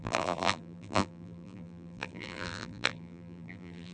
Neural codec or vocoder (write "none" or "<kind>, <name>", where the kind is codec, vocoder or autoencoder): vocoder, BigVGAN v2